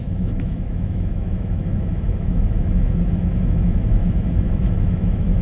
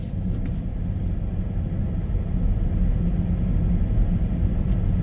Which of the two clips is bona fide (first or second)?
second